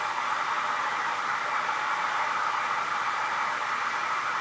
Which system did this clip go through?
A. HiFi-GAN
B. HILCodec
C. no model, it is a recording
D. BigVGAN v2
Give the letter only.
C